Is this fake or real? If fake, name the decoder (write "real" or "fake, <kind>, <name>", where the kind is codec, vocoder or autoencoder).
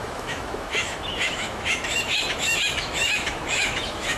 fake, autoencoder, DAC-VAE